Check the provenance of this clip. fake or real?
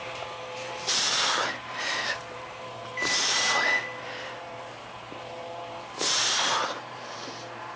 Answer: fake